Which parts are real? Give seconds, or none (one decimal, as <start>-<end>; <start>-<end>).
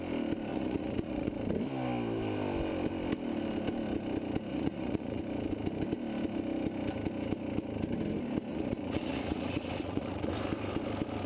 0.0-0.5; 1.3-4.5; 5.2-8.5; 10.3-11.3